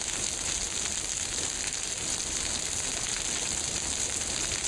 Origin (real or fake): real